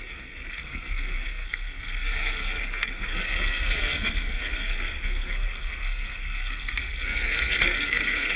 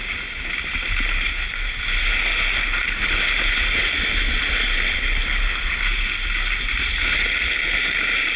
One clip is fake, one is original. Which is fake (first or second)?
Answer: first